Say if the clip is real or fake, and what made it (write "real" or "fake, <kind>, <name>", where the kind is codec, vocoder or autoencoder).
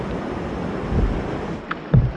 real